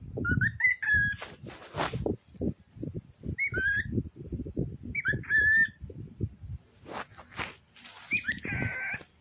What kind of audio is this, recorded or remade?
recorded